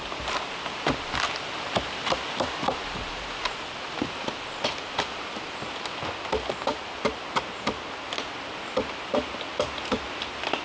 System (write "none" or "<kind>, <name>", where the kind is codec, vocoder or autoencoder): none